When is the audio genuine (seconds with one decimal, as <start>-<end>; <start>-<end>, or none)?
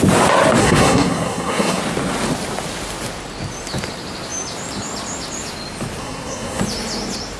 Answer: 0.0-0.6; 1.8-6.0; 6.6-7.4